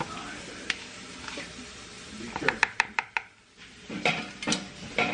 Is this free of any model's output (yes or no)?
yes